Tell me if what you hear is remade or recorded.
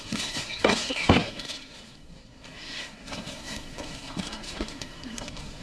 remade